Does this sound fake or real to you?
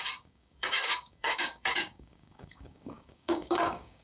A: fake